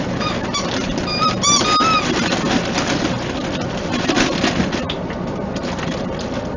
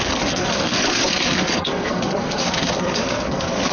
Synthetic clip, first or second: second